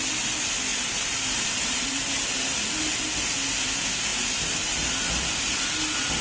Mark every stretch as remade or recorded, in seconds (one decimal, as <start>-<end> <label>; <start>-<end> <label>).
0.0-0.7 recorded; 0.7-2.0 remade; 2.0-4.1 recorded; 4.1-5.6 remade; 5.6-6.2 recorded